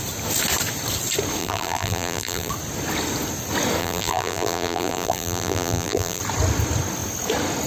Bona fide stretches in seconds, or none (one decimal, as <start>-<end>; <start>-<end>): 0.0-1.4; 2.5-3.8; 6.2-7.7